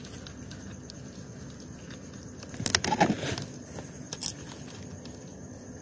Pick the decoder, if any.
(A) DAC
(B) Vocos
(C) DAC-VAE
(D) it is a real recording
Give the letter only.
D